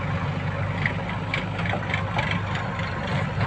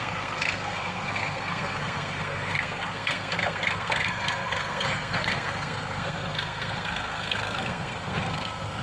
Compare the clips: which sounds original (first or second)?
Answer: first